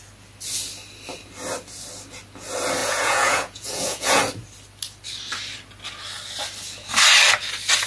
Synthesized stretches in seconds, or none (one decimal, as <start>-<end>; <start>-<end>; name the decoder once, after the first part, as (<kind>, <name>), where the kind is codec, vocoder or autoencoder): 2.8-4.2 (vocoder, Vocos)